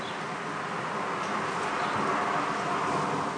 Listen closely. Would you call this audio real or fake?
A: real